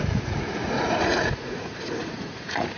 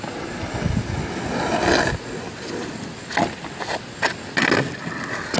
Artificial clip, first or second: first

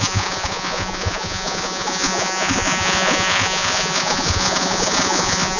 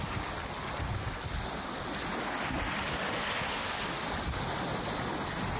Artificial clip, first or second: first